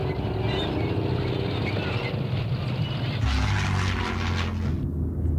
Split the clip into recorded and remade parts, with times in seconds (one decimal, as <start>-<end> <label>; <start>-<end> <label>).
0.0-5.4 recorded